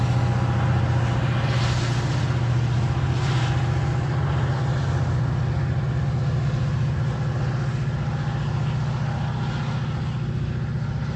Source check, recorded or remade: recorded